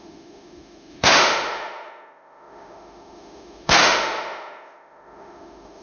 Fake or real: fake